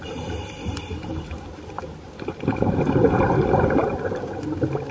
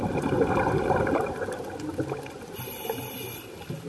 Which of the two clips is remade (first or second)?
first